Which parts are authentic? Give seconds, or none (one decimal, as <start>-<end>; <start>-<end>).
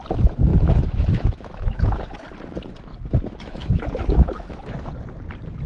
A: 0.0-0.5; 2.0-2.9; 4.9-5.7